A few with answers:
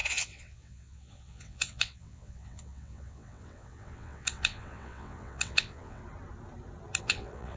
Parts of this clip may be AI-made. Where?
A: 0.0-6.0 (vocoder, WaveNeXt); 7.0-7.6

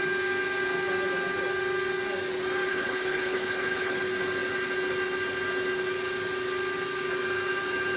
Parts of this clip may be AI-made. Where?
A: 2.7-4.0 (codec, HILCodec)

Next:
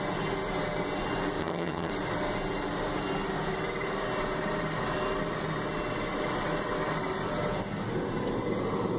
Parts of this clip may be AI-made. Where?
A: 1.4-1.9 (vocoder, HiFi-GAN)

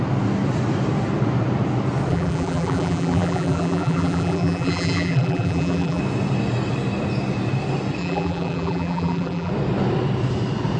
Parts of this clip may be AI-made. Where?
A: 2.1-6.0 (vocoder, BigVGAN v2); 8.0-9.5

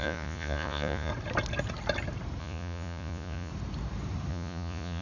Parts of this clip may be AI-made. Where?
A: 0.0-1.1 (vocoder, Vocos); 2.4-3.5; 4.3-5.0